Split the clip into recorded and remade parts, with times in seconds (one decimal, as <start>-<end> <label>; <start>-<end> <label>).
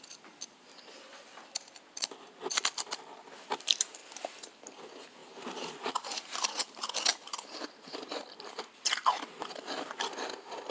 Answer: 0.0-5.2 recorded; 5.2-6.4 remade; 6.4-7.1 recorded; 7.1-8.2 remade; 8.2-10.7 recorded